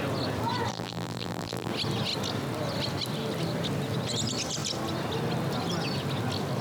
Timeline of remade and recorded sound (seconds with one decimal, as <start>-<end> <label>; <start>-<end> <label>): 0.0-0.7 recorded; 0.7-1.7 remade; 1.7-6.6 recorded